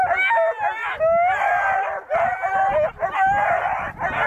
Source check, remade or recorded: recorded